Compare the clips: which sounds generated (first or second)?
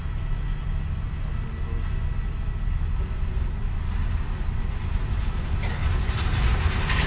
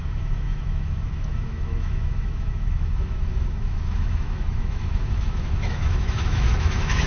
second